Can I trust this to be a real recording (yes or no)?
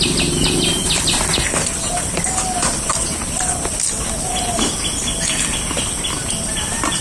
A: yes